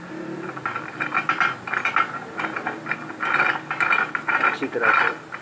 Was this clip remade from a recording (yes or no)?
no